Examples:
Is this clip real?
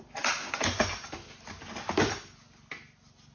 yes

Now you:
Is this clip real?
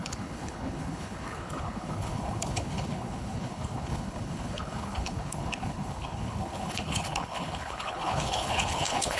no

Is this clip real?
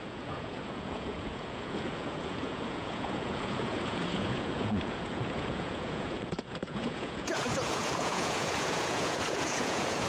no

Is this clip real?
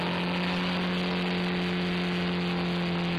yes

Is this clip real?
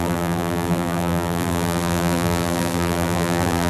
no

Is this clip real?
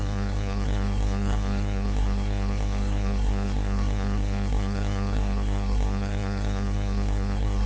no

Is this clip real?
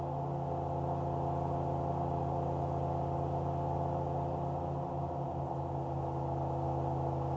yes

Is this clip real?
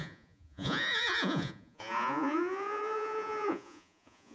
no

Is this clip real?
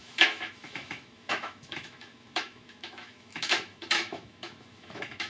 no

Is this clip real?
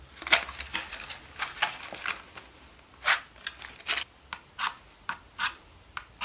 yes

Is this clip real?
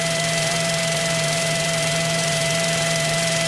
no